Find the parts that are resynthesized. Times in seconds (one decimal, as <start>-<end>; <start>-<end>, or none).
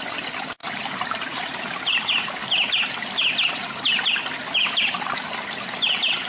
0.6-1.6